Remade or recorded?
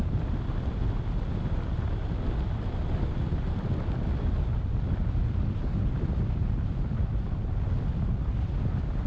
recorded